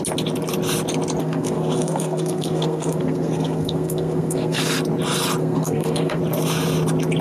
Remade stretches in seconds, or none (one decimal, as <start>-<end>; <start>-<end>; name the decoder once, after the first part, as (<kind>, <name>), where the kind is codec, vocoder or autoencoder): 1.2-4.6 (codec, SNAC); 5.4-6.2